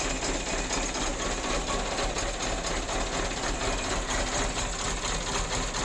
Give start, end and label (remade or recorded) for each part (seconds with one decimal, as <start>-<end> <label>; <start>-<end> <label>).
0.0-5.8 recorded